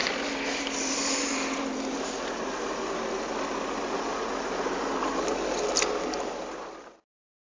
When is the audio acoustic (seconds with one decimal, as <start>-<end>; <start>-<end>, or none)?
0.0-7.5